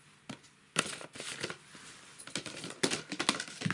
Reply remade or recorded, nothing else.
recorded